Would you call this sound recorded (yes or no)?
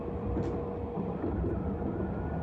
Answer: yes